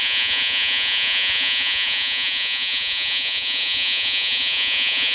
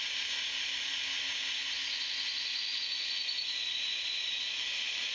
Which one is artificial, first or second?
first